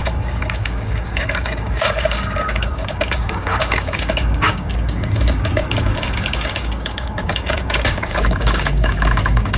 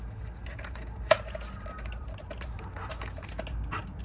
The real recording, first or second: second